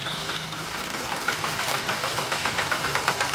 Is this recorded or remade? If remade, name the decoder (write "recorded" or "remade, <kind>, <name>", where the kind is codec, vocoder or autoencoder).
remade, codec, DAC